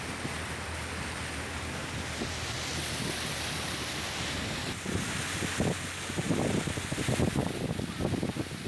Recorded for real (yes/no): yes